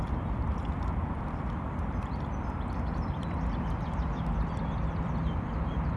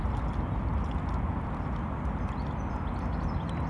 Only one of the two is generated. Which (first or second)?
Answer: first